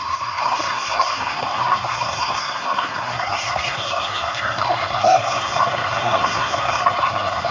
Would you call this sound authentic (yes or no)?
no